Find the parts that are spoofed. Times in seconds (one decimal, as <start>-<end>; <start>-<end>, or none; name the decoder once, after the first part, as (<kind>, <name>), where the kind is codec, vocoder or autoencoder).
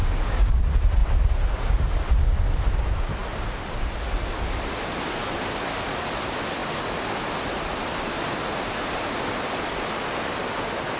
0.0-0.6 (codec, DAC)